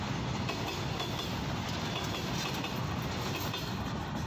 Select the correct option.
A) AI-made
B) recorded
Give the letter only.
B